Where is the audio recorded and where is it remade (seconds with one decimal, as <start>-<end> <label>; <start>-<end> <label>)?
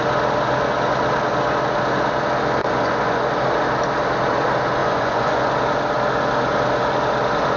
0.0-2.6 recorded; 2.6-3.2 remade; 3.2-4.8 recorded; 4.8-5.5 remade; 5.5-7.6 recorded